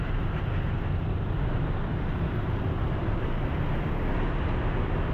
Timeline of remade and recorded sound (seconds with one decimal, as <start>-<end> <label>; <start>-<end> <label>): 0.0-1.9 recorded; 1.9-3.7 remade; 3.7-5.1 recorded